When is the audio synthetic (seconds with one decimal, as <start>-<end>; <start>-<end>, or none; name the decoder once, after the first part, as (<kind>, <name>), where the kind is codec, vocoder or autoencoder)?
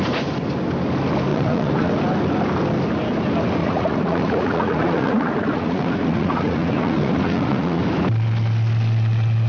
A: 1.3-1.9 (vocoder, Vocos); 3.6-7.8